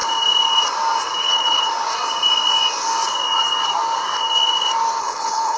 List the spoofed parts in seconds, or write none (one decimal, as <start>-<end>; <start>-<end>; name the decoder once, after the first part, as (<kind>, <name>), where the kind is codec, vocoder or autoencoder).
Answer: 1.2-1.7 (codec, HILCodec); 5.0-5.6